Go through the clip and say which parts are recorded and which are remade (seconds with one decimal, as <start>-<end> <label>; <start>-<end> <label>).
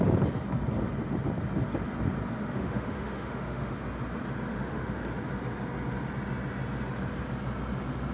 0.0-2.4 recorded; 2.4-3.7 remade; 3.7-4.5 recorded; 4.5-5.1 remade; 5.1-8.1 recorded